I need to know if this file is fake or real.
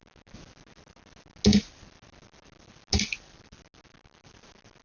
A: real